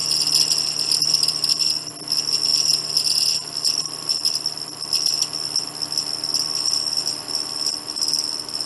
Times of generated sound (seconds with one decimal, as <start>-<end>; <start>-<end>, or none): none